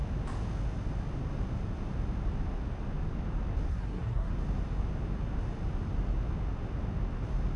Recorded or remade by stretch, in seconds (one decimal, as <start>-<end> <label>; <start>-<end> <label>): 0.0-3.7 recorded; 3.7-4.3 remade; 4.3-7.6 recorded